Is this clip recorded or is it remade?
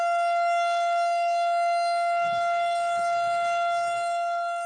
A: remade